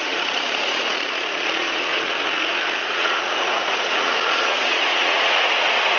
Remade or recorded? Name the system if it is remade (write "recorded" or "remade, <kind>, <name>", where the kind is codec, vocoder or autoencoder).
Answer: remade, vocoder, Vocos